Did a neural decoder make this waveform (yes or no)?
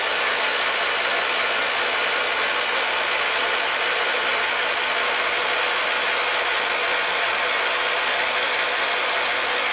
no